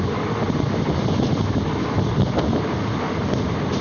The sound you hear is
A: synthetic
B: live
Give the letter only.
B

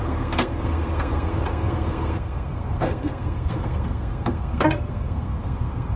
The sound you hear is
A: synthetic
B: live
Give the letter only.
A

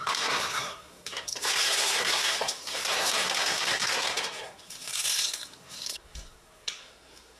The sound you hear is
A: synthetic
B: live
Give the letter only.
A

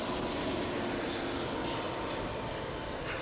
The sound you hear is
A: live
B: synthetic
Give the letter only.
A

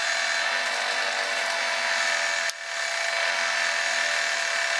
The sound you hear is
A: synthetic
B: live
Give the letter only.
B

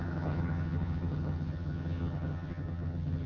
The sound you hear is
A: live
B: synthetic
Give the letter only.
B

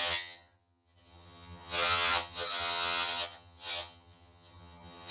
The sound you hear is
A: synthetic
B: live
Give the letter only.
A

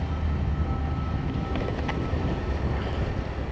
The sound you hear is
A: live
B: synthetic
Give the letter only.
A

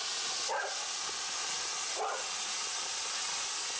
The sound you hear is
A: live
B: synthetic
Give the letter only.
A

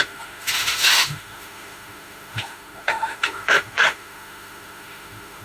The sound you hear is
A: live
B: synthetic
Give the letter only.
B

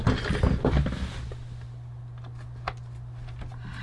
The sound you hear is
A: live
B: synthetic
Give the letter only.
A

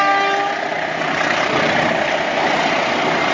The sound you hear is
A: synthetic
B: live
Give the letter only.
B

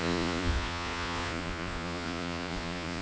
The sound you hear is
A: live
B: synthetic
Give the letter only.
B